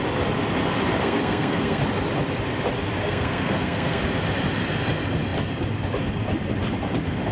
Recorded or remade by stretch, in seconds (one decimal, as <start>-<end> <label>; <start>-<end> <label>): 0.0-1.0 recorded; 1.0-1.8 remade; 1.8-3.0 recorded; 3.0-4.0 remade; 4.0-7.3 recorded